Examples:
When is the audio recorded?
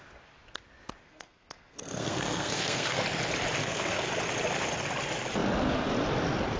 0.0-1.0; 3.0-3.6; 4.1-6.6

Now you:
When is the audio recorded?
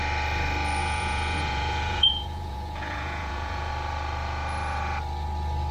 0.0-0.8; 3.7-5.7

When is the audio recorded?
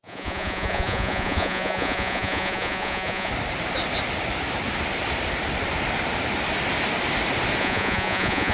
3.3-7.6